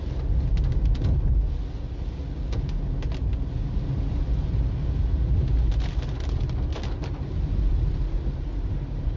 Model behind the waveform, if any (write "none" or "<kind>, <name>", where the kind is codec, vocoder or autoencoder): none